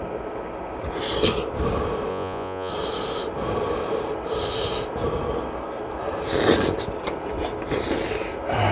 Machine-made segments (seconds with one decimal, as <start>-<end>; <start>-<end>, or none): 2.1-2.7